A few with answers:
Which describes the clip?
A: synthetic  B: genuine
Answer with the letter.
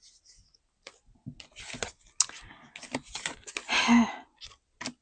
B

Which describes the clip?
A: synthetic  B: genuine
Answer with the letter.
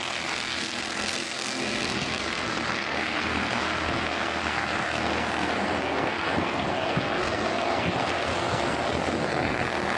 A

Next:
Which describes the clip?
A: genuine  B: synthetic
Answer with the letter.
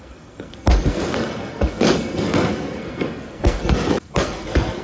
B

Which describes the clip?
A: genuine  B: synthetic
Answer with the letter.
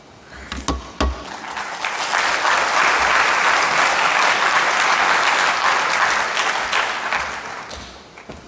A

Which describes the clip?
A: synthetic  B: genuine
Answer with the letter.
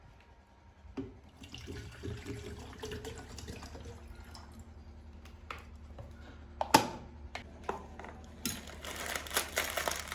B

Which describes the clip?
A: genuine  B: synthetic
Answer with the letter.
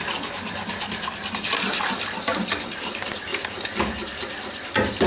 A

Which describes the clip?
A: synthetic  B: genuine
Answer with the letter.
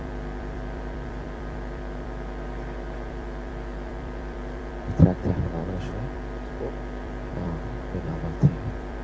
A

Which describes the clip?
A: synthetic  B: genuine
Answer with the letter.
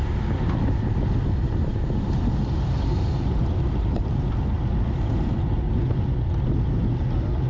B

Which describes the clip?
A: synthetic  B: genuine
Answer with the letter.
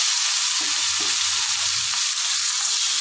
B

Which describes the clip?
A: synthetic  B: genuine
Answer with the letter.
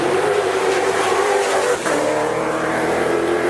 B